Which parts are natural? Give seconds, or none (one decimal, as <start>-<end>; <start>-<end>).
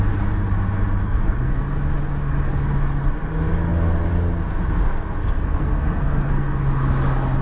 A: 0.0-1.0; 1.6-5.2; 6.6-7.4